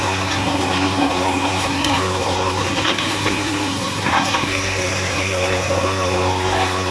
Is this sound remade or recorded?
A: remade